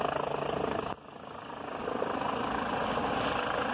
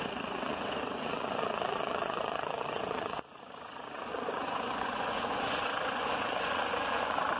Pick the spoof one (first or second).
second